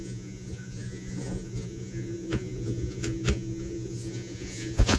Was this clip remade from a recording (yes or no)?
yes